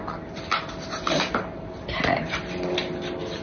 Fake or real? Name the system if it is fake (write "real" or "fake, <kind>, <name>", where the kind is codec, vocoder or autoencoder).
real